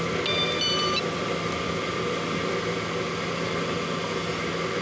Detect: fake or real real